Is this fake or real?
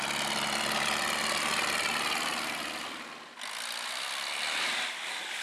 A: real